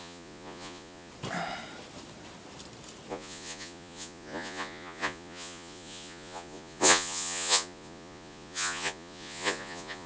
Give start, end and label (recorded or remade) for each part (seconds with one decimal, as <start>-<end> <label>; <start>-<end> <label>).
0.0-1.1 remade; 1.1-3.1 recorded; 3.1-10.1 remade